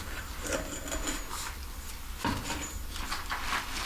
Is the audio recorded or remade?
recorded